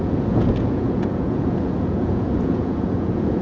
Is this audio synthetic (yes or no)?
yes